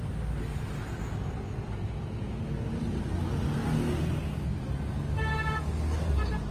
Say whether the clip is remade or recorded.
recorded